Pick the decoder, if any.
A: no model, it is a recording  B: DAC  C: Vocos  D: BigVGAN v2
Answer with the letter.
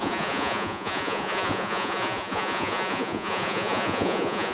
C